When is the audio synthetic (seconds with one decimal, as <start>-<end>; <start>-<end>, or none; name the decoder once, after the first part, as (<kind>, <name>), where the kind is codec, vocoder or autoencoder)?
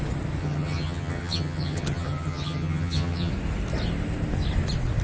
0.4-3.3 (vocoder, HiFi-GAN)